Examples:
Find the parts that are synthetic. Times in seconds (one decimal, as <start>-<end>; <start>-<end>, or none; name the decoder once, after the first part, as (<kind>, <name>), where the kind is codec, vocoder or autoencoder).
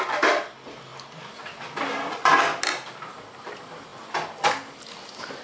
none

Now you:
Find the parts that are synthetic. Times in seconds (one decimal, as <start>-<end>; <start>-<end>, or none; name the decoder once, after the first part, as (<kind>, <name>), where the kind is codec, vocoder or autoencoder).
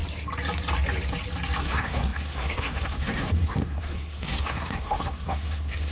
1.6-5.9 (codec, SNAC)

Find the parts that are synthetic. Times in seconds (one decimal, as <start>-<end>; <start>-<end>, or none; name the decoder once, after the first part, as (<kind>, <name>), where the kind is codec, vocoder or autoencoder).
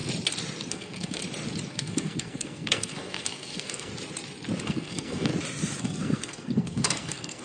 0.7-1.2 (codec, SNAC); 1.7-3.9; 4.6-5.3; 5.8-7.4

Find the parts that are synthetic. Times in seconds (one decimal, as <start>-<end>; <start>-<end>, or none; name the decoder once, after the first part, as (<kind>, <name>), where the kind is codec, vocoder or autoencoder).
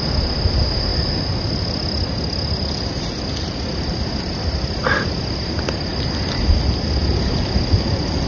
none